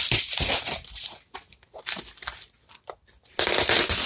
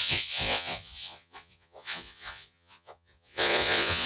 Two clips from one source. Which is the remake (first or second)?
second